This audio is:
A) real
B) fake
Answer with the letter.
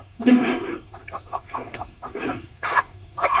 B